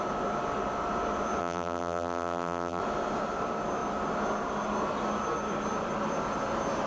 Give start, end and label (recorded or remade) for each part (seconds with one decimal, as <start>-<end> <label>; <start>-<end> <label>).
0.0-1.4 recorded; 1.4-2.8 remade; 2.8-6.9 recorded